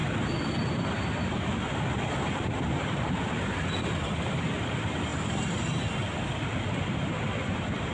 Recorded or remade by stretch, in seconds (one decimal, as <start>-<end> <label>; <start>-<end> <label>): 0.0-1.6 remade; 1.6-5.1 recorded; 5.1-6.7 remade; 6.7-7.9 recorded